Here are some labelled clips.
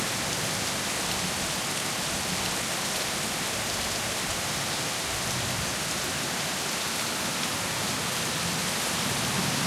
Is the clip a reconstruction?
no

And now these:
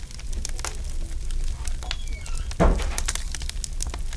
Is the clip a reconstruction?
no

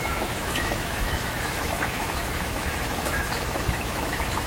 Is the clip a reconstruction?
yes